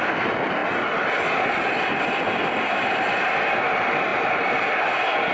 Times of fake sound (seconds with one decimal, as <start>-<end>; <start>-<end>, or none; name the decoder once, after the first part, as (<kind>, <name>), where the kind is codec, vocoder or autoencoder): none